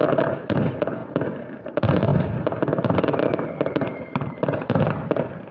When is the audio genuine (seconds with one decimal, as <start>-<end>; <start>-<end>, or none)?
0.0-5.5

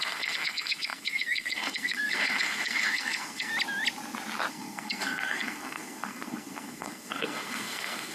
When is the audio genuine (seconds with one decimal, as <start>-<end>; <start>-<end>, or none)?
3.5-4.5

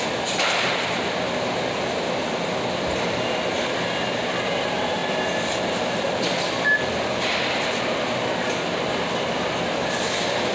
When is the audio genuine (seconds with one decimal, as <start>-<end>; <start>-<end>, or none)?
0.0-10.5